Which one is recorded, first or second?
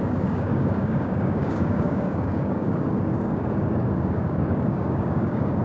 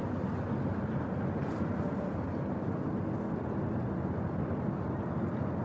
second